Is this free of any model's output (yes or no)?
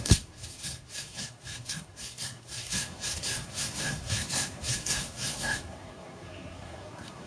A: no